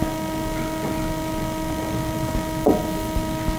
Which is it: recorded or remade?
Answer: recorded